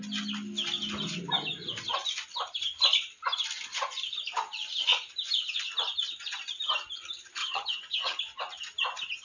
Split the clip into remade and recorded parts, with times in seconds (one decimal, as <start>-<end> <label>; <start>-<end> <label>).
0.0-7.4 recorded; 7.4-8.2 remade; 8.2-9.2 recorded